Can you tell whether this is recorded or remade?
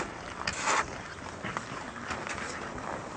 remade